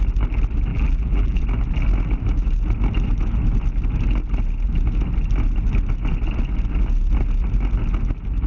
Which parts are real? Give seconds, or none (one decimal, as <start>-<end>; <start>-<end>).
0.0-0.7; 1.4-8.5